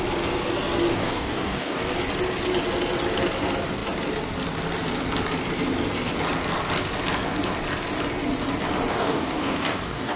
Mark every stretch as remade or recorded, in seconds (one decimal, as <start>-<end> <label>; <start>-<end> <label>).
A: 0.0-0.9 recorded; 0.9-1.8 remade; 1.8-8.9 recorded; 8.9-10.2 remade

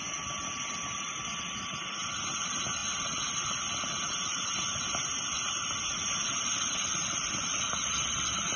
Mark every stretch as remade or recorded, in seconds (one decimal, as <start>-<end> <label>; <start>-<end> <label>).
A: 0.0-8.6 recorded

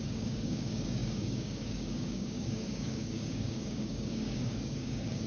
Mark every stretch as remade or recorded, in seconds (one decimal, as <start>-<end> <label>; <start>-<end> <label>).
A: 0.0-5.3 remade